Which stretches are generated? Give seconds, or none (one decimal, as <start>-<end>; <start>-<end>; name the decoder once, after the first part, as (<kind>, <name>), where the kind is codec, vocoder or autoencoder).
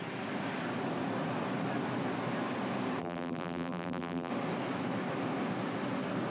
3.0-4.3 (vocoder, BigVGAN v2)